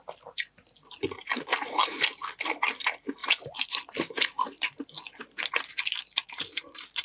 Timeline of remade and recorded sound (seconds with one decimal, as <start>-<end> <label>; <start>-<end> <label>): 0.0-1.5 recorded; 1.5-2.0 remade; 2.0-3.2 recorded; 3.2-4.8 remade; 4.8-6.2 recorded; 6.2-7.0 remade